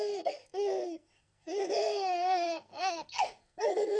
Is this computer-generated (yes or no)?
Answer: yes